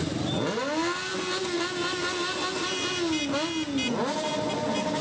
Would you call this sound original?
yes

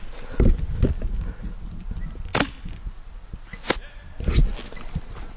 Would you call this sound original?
yes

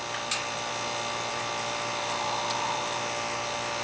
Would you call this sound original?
yes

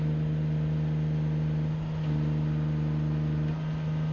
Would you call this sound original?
yes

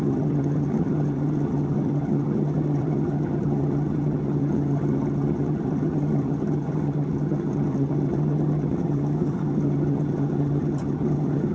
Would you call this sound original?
no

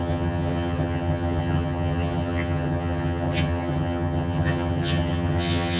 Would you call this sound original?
no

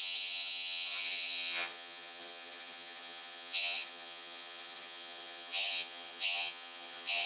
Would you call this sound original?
no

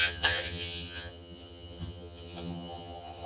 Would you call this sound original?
no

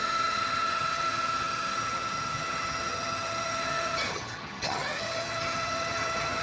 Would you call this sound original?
no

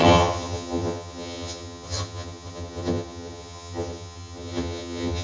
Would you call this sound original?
no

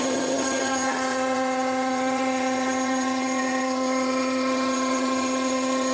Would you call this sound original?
no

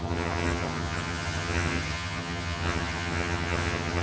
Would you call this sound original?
no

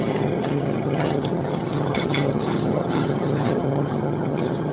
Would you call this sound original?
no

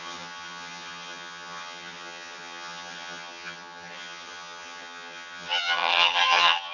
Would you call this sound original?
no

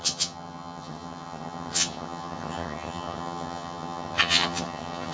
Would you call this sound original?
no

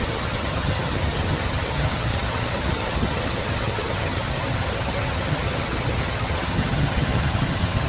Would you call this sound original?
no